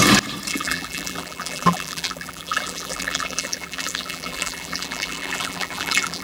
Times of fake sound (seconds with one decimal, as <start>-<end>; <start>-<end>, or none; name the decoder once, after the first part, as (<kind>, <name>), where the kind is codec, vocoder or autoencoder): 0.5-6.2 (vocoder, BigVGAN v2)